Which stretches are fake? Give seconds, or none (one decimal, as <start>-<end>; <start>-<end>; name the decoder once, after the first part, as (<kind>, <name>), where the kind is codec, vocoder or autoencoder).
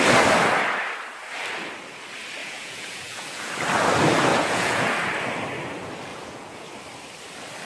2.4-3.5 (vocoder, Vocos); 4.3-4.9; 6.1-6.7